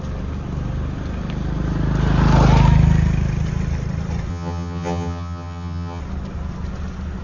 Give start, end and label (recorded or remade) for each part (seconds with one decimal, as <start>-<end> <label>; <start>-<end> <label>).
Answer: 0.0-4.3 recorded; 4.3-6.0 remade; 6.0-7.2 recorded